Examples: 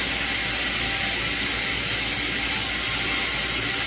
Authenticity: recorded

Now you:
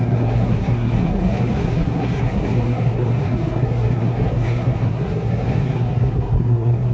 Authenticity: remade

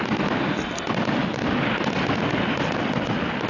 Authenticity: recorded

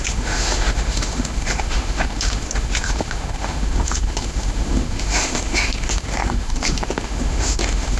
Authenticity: remade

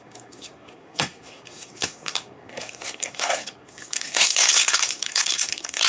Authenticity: remade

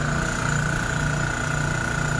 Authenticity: recorded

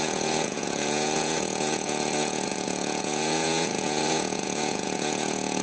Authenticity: remade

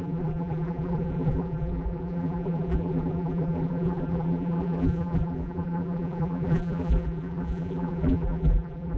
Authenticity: remade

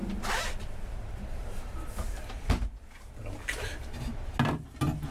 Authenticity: recorded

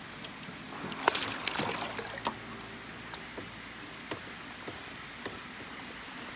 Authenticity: recorded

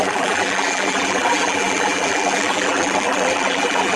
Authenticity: remade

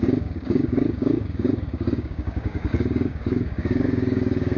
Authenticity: remade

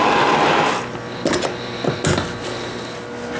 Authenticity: recorded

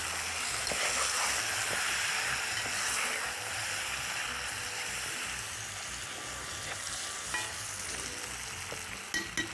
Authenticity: recorded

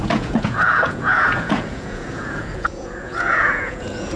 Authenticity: remade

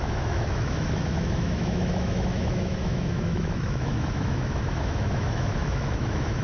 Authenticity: remade